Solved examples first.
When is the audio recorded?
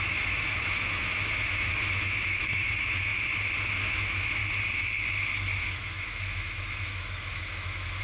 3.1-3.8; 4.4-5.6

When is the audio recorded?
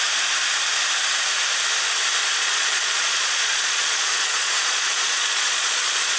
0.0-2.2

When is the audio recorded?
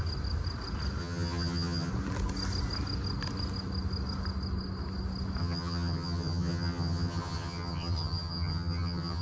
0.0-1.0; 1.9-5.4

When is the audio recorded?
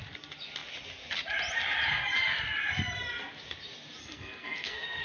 0.0-4.0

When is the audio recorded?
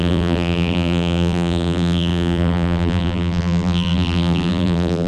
none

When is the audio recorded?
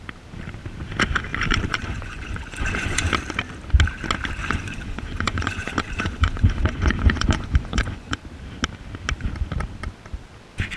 0.0-1.3; 3.1-4.4; 8.2-10.8